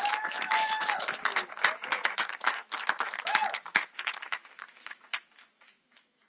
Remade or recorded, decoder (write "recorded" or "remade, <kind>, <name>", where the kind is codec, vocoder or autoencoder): remade, autoencoder, DAC-VAE